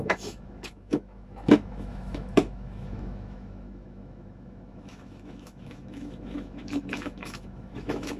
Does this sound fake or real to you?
fake